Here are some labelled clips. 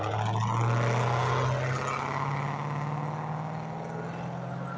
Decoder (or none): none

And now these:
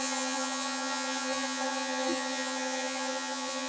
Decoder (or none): vocoder, HiFi-GAN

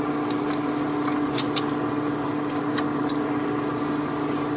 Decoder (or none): none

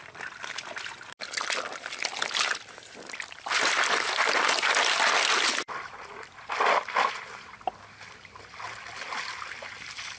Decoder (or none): none